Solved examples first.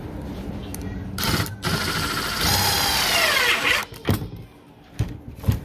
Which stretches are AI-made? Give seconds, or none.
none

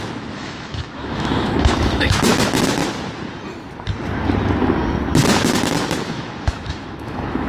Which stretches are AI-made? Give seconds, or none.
0.0-2.3 (autoencoder, DAC-VAE); 6.1-7.5

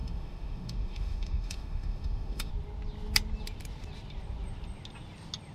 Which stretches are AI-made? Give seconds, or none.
0.0-2.5 (autoencoder, DAC-VAE)

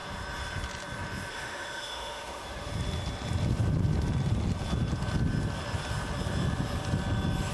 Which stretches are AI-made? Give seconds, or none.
1.3-2.7 (autoencoder, DAC-VAE)

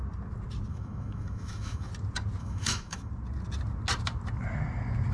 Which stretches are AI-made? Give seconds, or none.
0.7-1.9 (autoencoder, DAC-VAE); 2.4-3.1

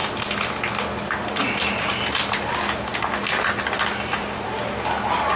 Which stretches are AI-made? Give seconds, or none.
none